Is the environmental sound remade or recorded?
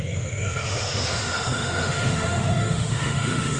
remade